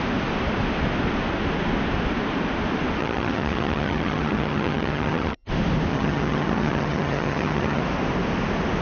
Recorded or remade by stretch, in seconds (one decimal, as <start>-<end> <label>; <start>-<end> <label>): 0.0-3.0 recorded; 3.0-5.5 remade; 5.5-5.9 recorded; 5.9-7.8 remade; 7.8-8.8 recorded